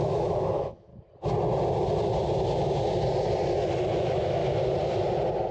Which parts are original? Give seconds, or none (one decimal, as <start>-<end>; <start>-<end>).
0.9-3.9; 4.4-5.5